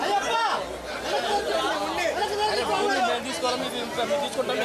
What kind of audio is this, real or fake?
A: real